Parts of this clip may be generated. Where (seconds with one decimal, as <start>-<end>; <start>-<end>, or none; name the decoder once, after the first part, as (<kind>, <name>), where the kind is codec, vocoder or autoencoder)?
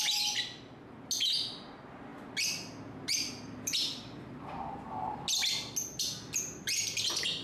none